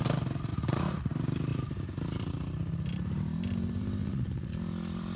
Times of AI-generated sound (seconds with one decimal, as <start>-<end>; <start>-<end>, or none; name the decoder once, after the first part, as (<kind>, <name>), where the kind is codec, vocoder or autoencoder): 0.5-1.1 (vocoder, Vocos); 4.0-4.5